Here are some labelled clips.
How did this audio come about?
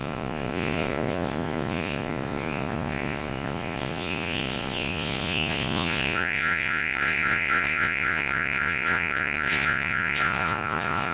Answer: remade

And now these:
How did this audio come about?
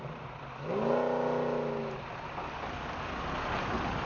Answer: recorded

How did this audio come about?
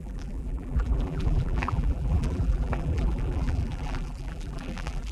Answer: remade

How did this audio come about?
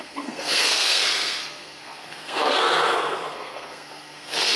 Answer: remade